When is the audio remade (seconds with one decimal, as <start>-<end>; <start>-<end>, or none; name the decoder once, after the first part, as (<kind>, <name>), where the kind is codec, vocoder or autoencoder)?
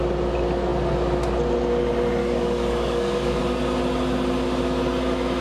2.2-3.4 (codec, DAC)